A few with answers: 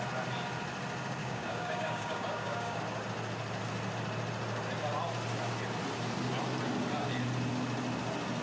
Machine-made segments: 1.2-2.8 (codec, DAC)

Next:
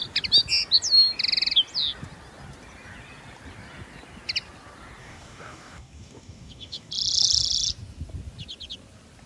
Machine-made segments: 5.0-6.9 (codec, DAC)

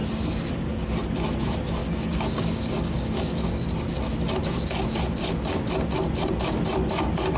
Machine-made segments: 1.8-3.6 (codec, DAC)

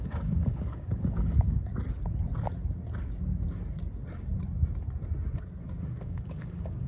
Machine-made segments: 0.0-1.7 (codec, DAC); 5.8-6.9

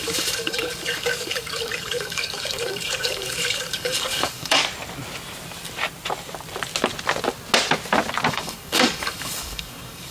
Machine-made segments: 0.0-4.6 (codec, DAC); 8.3-10.1

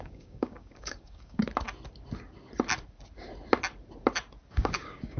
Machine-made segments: 0.0-1.4 (codec, DAC); 4.5-5.2

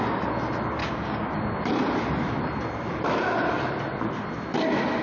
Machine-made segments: 0.8-1.4 (codec, DAC)

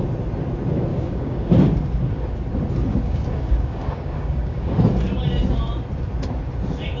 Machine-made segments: 0.9-1.5 (codec, DAC); 2.9-4.8